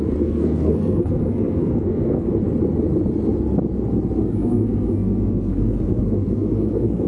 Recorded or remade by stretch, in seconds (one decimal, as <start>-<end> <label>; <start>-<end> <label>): 0.0-2.3 remade; 2.3-4.2 recorded; 4.2-7.1 remade